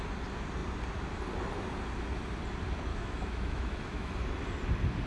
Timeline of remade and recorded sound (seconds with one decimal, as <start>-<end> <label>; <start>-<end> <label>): 0.0-2.9 recorded; 2.9-4.1 remade; 4.1-5.1 recorded